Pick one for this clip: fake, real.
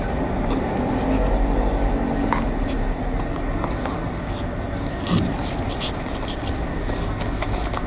real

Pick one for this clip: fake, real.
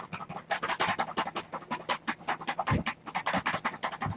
real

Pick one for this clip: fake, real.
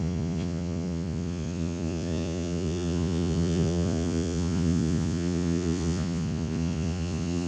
fake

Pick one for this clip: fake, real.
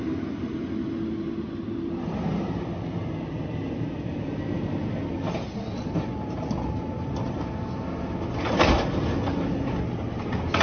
real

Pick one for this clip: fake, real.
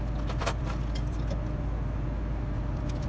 real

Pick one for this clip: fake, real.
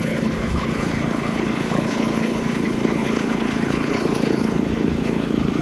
fake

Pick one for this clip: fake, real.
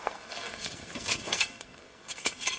fake